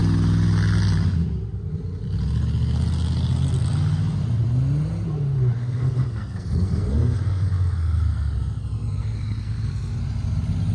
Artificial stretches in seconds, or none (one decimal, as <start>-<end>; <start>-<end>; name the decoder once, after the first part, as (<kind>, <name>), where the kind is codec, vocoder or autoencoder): 5.6-10.0 (codec, SNAC)

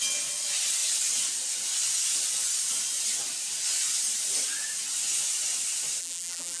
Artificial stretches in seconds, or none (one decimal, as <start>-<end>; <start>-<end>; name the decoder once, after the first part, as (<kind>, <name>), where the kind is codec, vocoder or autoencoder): 6.0-6.6 (vocoder, BigVGAN v2)

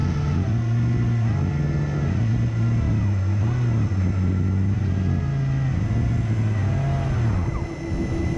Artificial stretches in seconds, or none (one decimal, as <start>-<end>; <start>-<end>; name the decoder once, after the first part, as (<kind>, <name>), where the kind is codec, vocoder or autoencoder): none

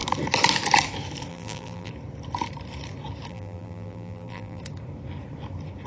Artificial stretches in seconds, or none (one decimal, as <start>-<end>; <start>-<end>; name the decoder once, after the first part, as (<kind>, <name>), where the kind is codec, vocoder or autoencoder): 1.3-1.9 (vocoder, BigVGAN v2); 3.3-4.6

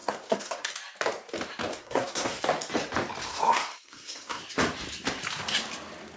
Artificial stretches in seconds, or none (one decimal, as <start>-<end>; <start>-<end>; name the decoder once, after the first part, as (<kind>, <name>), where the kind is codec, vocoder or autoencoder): 0.0-0.7 (codec, SNAC); 1.7-2.4; 3.3-4.4

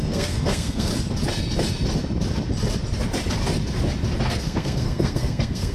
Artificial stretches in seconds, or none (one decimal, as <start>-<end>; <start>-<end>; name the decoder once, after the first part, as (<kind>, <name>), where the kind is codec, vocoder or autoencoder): 0.0-0.9 (codec, SNAC); 4.3-5.7

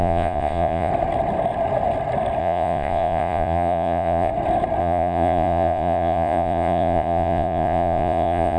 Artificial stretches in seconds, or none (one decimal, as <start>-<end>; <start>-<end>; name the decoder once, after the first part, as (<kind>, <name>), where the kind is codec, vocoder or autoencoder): 0.0-0.9 (vocoder, Vocos); 2.4-4.3; 4.8-8.6

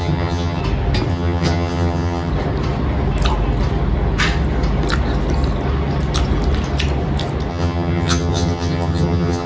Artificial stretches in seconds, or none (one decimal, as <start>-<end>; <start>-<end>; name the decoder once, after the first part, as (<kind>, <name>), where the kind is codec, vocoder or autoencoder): 0.0-0.6 (vocoder, HiFi-GAN); 1.1-2.3; 7.5-9.5